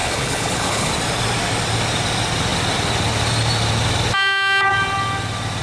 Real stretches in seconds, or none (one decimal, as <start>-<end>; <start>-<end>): 0.9-5.6